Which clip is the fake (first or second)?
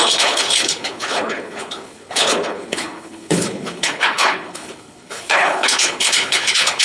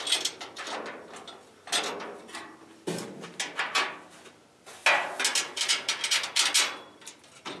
first